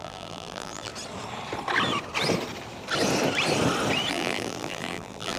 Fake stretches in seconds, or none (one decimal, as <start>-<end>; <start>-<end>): 0.0-0.9; 4.1-5.4

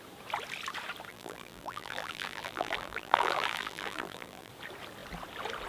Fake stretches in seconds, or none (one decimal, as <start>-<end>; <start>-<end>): 1.1-4.5

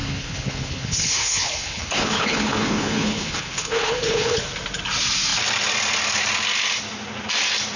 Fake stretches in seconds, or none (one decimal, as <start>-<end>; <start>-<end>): 0.0-4.4

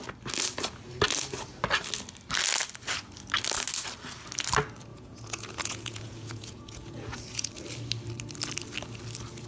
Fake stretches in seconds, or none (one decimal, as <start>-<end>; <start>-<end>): 4.9-7.5

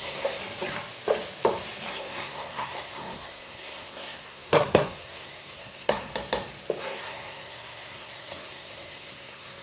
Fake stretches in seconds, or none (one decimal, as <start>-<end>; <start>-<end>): 0.0-0.4; 1.9-6.1; 6.8-9.6

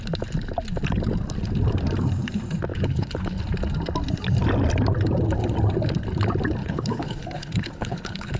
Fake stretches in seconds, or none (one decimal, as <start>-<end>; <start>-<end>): 2.7-3.4; 6.6-8.4